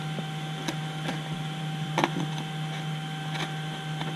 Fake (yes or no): no